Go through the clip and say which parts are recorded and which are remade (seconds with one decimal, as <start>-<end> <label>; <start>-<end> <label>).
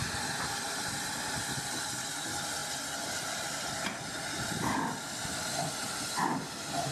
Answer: 0.0-6.9 recorded